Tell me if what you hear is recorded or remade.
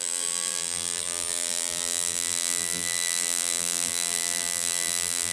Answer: remade